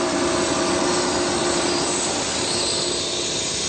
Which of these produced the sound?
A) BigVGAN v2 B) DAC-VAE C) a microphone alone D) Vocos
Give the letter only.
C